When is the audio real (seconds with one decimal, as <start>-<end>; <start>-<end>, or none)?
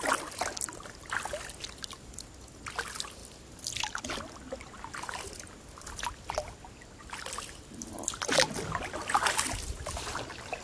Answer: 0.0-10.6